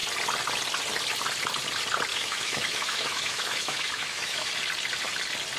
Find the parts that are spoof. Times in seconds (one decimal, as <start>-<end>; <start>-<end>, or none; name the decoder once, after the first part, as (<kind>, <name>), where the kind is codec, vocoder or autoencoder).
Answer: 2.1-4.5 (autoencoder, DAC-VAE)